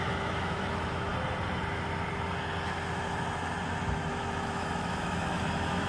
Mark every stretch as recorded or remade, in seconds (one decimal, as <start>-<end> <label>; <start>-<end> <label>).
0.0-1.1 remade; 1.1-4.1 recorded; 4.1-5.9 remade